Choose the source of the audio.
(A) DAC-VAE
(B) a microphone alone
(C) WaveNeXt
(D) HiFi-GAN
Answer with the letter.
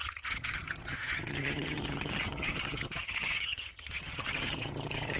D